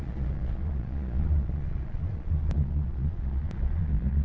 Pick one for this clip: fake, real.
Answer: fake